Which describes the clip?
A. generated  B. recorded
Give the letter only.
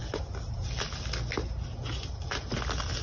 B